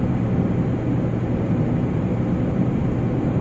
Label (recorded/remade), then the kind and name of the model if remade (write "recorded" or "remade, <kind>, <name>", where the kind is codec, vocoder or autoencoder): recorded